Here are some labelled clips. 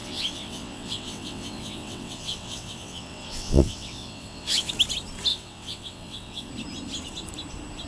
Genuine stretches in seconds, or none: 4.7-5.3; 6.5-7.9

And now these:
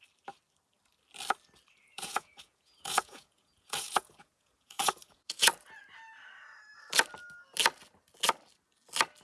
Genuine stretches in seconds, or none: 0.0-1.8; 5.5-9.2

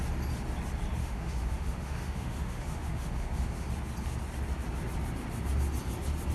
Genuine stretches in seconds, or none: 0.0-1.0; 3.7-6.3

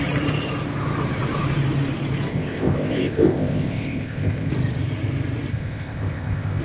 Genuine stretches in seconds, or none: 0.0-2.3; 4.5-5.5